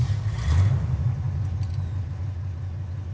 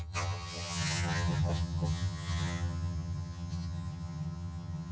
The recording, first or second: first